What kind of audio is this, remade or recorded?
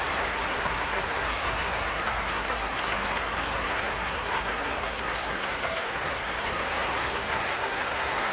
remade